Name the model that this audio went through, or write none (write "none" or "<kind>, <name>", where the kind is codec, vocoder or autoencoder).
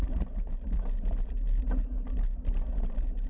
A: none